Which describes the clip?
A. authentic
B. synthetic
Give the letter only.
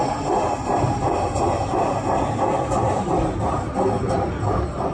A